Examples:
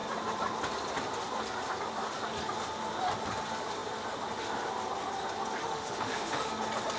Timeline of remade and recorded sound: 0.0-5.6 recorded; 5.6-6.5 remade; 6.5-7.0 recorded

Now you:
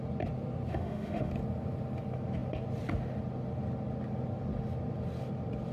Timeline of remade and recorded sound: 0.0-0.7 recorded; 0.7-1.3 remade; 1.3-5.7 recorded

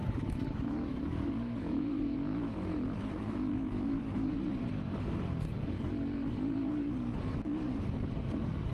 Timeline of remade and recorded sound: 0.0-4.3 remade; 4.3-8.7 recorded

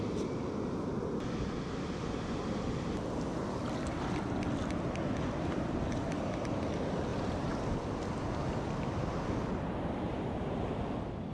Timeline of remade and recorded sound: 0.0-11.3 recorded

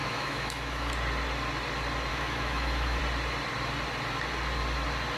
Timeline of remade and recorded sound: 0.0-0.9 remade; 0.9-2.1 recorded; 2.1-3.0 remade; 3.0-5.2 recorded